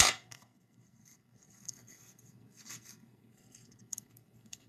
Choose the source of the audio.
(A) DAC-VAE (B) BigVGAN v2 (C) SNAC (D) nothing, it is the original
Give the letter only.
C